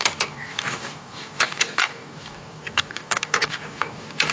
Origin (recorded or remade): remade